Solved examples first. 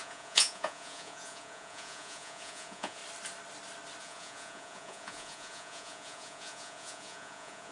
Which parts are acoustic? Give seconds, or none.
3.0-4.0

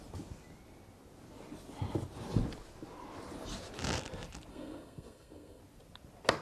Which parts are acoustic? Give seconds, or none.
0.0-4.5; 5.6-6.4

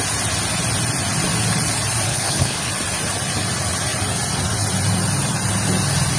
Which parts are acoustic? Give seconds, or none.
0.0-2.1; 2.7-6.2

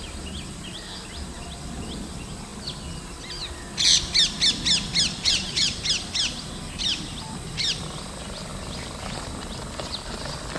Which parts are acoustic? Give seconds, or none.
0.0-5.1; 5.8-10.6

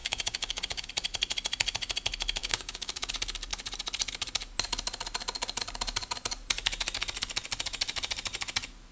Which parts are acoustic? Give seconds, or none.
0.9-2.4; 3.1-8.9